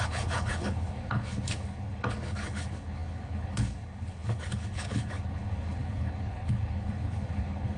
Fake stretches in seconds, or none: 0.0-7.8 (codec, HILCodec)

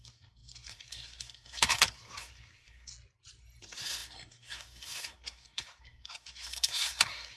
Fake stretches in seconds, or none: 0.0-2.9 (codec, SNAC); 3.6-7.4

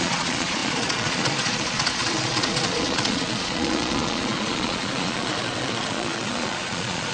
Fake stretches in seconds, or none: 0.0-7.1 (vocoder, Vocos)

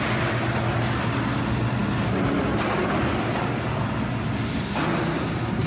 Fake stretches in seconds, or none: none